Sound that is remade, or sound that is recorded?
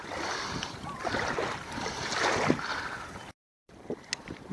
recorded